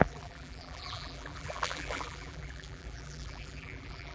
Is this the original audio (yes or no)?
no